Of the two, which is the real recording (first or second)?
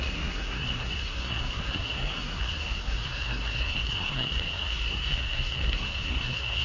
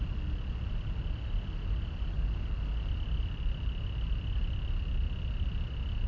second